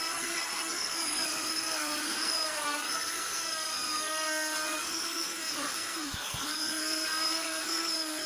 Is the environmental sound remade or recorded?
remade